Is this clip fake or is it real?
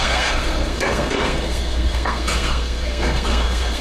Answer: fake